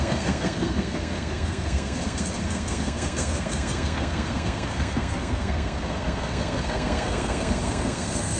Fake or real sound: fake